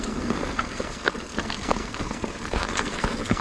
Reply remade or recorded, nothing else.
remade